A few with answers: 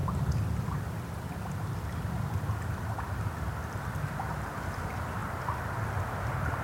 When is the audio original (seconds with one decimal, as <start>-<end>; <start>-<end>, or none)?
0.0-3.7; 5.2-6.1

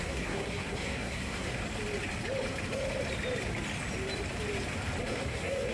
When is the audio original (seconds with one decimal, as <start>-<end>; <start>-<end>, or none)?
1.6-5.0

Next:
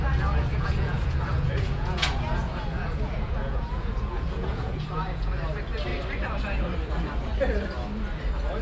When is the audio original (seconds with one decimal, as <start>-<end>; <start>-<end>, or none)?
0.0-0.5; 5.3-8.6

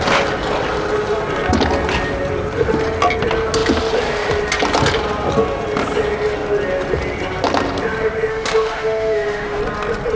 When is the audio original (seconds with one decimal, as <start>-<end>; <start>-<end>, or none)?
0.0-8.3; 9.6-10.2